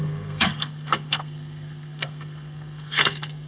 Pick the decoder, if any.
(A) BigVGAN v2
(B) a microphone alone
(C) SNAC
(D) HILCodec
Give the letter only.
C